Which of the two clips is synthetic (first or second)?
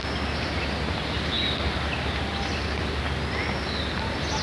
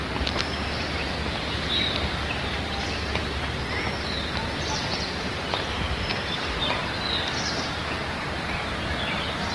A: second